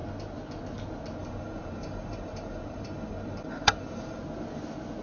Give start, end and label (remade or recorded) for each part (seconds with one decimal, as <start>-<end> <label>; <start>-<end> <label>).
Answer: 0.0-1.2 recorded; 1.2-4.2 remade; 4.2-5.0 recorded